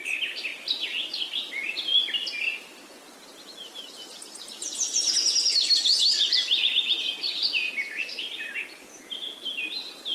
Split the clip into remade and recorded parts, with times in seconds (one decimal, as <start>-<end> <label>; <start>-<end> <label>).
0.0-10.1 recorded